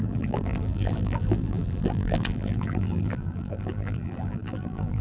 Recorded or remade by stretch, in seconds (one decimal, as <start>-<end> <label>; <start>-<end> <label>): 0.0-5.0 remade